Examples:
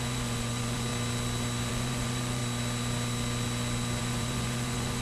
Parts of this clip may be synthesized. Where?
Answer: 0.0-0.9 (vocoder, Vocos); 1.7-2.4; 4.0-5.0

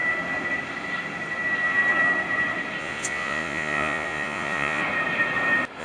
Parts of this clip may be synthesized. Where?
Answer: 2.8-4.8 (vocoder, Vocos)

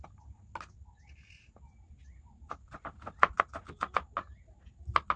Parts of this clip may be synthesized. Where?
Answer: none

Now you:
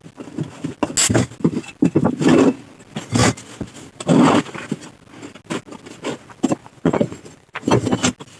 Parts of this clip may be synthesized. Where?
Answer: 6.6-7.7 (vocoder, Vocos)

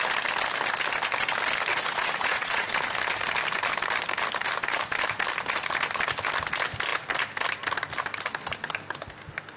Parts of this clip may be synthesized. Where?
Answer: 1.7-2.7 (vocoder, Vocos)